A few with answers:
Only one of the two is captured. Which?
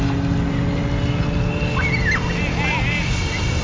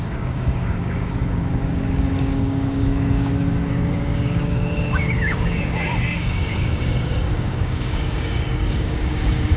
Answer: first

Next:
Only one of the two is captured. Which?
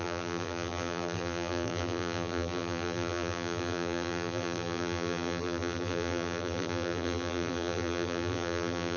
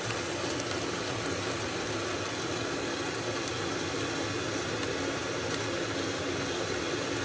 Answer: second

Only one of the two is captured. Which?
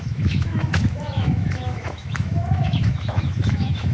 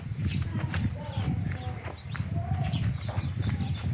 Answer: second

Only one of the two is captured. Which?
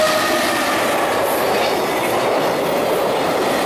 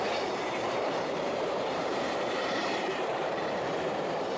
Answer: first